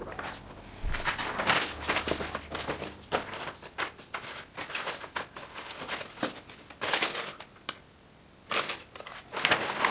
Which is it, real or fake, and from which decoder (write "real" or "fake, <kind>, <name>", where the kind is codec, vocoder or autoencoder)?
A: real